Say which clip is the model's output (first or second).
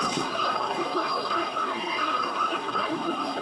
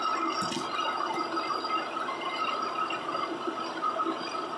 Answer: first